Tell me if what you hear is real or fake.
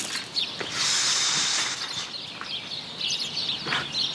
real